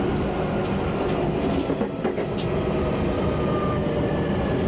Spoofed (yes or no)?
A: no